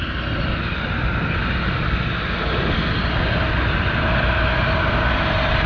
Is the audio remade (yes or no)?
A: no